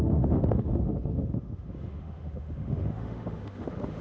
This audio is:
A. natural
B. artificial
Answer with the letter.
B